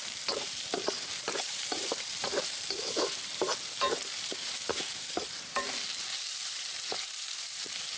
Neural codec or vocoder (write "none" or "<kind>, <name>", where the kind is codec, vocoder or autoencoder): vocoder, BigVGAN v2